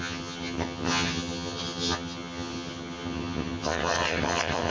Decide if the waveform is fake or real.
fake